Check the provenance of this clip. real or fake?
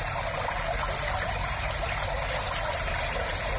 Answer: real